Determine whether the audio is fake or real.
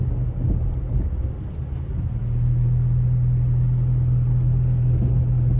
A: real